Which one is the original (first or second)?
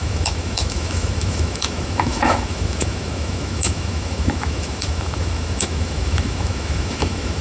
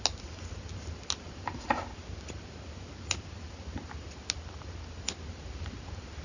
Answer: second